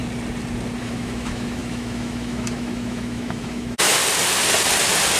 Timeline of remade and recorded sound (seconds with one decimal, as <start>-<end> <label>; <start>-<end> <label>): 0.0-0.8 recorded; 0.8-4.0 remade; 4.0-5.2 recorded